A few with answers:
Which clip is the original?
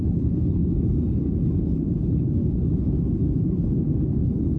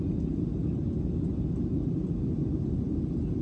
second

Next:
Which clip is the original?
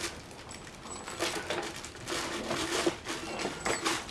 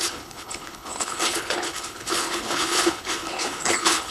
first